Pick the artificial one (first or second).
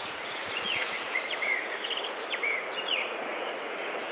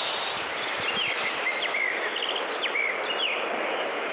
first